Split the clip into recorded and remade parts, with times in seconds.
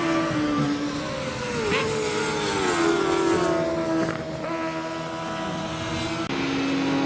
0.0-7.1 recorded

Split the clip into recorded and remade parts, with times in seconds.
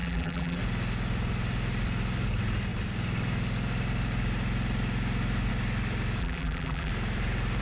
0.0-0.6 remade; 0.6-6.2 recorded; 6.2-6.9 remade; 6.9-7.6 recorded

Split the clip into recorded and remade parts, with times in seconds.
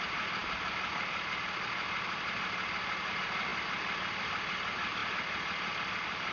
0.0-6.3 recorded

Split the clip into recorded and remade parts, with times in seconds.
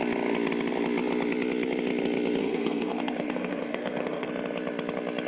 0.0-2.4 recorded; 2.4-4.3 remade; 4.3-5.3 recorded